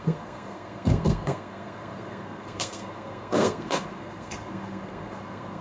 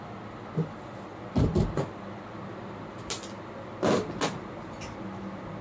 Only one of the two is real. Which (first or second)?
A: second